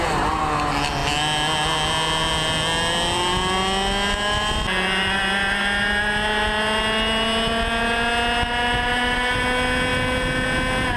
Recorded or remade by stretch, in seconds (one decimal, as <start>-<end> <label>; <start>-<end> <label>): 0.0-11.0 recorded